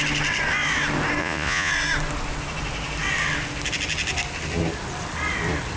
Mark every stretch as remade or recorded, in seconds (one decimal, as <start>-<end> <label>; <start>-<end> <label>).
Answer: 0.0-1.2 recorded; 1.2-1.7 remade; 1.7-5.8 recorded

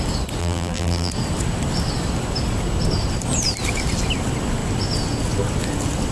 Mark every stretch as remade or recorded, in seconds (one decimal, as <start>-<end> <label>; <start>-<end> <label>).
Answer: 0.0-0.4 recorded; 0.4-1.1 remade; 1.1-6.1 recorded

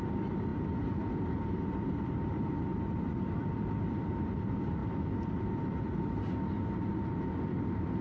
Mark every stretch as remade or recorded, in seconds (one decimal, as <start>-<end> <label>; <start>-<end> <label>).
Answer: 0.0-0.5 recorded; 0.5-2.2 remade; 2.2-2.7 recorded; 2.7-4.1 remade; 4.1-8.0 recorded

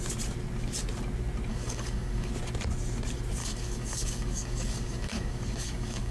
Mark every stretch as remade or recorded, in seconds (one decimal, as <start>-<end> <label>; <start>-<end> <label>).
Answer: 0.0-1.5 recorded; 1.5-2.3 remade; 2.3-3.4 recorded; 3.4-6.1 remade

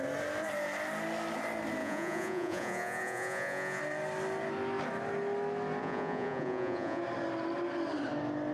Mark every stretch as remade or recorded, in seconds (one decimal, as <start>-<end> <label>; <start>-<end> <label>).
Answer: 0.0-1.8 recorded; 1.8-3.8 remade; 3.8-5.8 recorded; 5.8-7.0 remade; 7.0-8.5 recorded

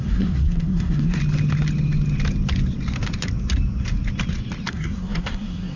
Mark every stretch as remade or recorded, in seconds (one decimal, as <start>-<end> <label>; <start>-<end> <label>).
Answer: 0.0-1.2 remade; 1.2-4.7 recorded; 4.7-5.8 remade

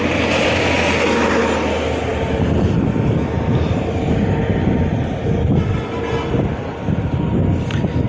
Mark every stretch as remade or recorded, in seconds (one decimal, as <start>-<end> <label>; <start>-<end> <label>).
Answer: 0.0-8.1 recorded